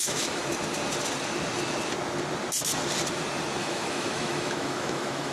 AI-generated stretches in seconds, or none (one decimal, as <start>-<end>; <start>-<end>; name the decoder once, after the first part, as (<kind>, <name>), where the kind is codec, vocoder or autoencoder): 0.0-0.4 (autoencoder, DAC-VAE); 3.6-5.3